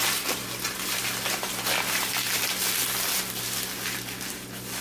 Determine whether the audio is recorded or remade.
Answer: recorded